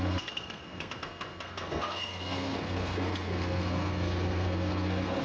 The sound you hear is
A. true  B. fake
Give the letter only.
B